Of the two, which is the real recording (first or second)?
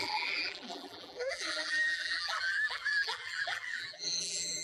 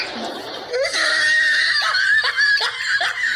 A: second